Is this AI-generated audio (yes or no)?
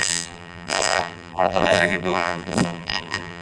yes